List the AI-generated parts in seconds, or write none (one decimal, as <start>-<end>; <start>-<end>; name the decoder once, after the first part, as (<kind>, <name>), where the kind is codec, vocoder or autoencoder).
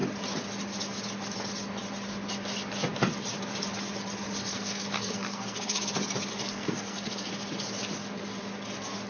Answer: 4.5-5.8 (codec, SNAC); 6.3-7.3